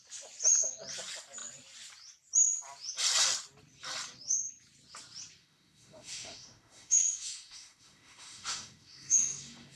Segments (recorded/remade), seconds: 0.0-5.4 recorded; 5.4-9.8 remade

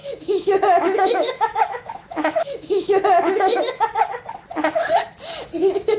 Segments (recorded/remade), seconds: 0.0-3.6 remade; 3.6-6.0 recorded

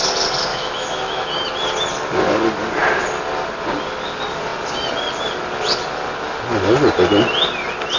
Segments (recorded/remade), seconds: 0.0-0.5 recorded; 0.5-1.3 remade; 1.3-8.0 recorded

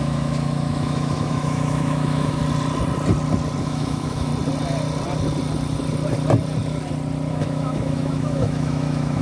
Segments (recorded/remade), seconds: 0.0-2.4 remade; 2.4-3.6 recorded; 3.6-4.3 remade; 4.3-7.3 recorded; 7.3-9.2 remade